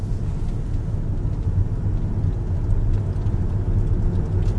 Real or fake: real